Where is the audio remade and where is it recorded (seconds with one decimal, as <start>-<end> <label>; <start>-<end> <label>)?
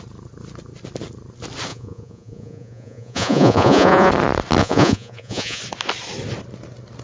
0.0-1.7 recorded; 1.7-4.1 remade; 4.1-4.6 recorded; 4.6-5.6 remade; 5.6-7.0 recorded